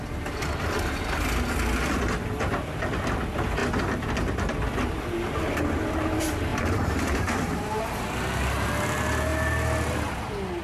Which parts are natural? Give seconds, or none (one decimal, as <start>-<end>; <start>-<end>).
0.0-6.5; 7.8-10.6